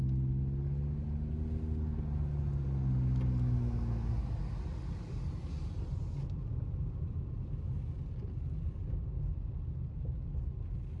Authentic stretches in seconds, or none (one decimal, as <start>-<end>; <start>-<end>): 0.0-11.0